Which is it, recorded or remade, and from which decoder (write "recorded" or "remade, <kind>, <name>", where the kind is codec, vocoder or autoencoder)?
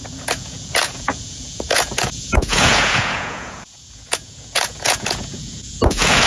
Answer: remade, vocoder, Vocos